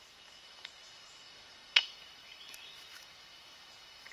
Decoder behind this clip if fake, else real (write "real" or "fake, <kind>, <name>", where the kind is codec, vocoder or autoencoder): fake, autoencoder, DAC-VAE